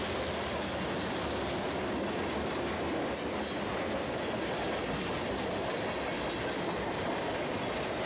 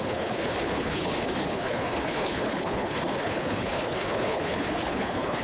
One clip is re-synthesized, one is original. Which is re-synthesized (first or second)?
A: second